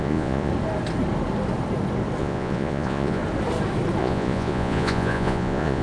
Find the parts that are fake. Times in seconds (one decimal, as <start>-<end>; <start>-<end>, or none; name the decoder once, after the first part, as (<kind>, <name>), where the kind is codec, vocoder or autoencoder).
0.0-0.5 (vocoder, Vocos); 2.2-3.2; 4.0-5.8